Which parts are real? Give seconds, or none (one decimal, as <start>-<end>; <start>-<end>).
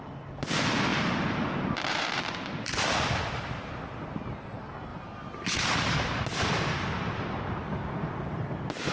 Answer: 0.0-0.9; 2.8-4.9; 6.4-8.9